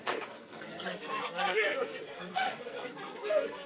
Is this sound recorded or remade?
remade